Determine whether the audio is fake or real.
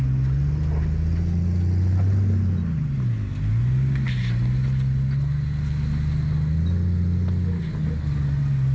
real